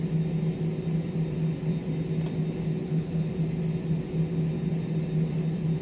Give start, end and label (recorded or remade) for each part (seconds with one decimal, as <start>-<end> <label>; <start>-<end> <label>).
0.0-2.8 recorded; 2.8-3.3 remade; 3.3-5.8 recorded